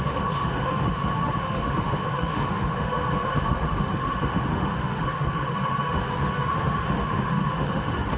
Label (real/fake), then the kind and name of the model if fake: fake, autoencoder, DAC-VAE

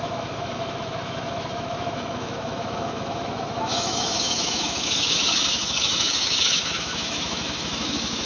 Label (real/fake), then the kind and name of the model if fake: fake, autoencoder, DAC-VAE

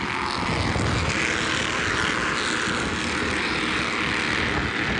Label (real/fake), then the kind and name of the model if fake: real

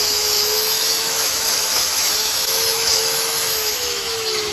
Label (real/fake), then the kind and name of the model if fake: fake, autoencoder, DAC-VAE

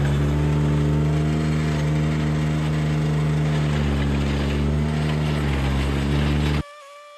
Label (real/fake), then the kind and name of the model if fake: real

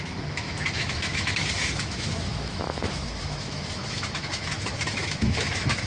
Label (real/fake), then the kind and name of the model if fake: fake, autoencoder, DAC-VAE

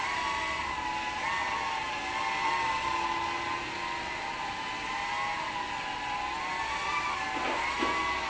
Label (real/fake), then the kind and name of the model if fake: real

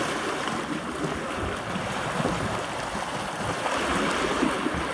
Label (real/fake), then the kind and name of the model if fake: real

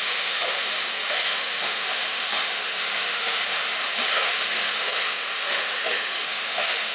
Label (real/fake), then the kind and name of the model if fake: fake, autoencoder, DAC-VAE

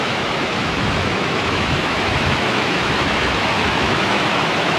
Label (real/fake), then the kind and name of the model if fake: fake, autoencoder, DAC-VAE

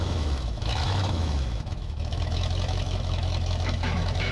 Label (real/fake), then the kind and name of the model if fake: fake, autoencoder, DAC-VAE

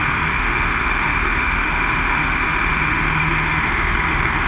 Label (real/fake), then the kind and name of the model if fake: fake, autoencoder, DAC-VAE